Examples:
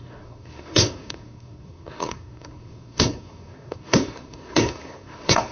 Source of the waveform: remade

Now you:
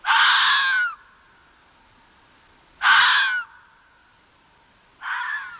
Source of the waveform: recorded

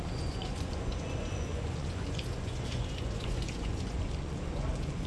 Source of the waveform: remade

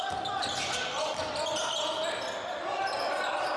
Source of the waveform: recorded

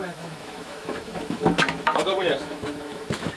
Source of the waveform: remade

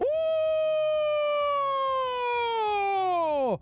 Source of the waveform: recorded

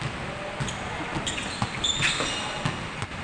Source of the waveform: recorded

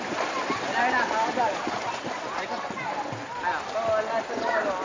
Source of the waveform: recorded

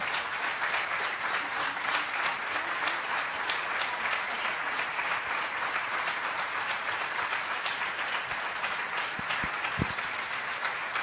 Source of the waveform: remade